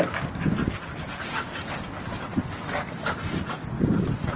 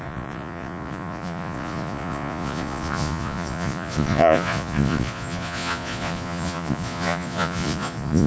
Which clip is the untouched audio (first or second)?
first